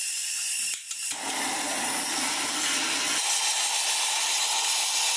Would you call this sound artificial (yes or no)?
no